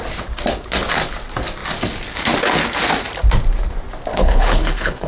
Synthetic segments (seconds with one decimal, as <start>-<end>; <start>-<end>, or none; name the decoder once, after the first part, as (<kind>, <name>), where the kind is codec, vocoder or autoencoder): 4.1-5.1 (codec, HILCodec)